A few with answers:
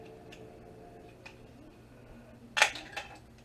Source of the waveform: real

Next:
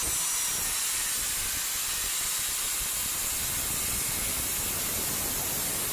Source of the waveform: real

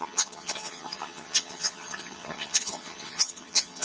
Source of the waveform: fake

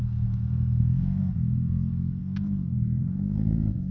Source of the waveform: fake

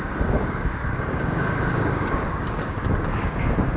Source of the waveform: fake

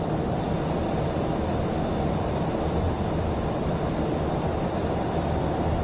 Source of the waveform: fake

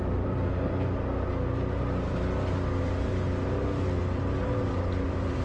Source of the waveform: real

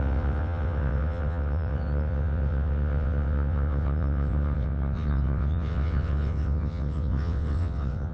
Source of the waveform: fake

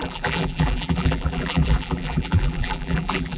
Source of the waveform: fake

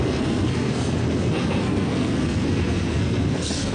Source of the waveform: fake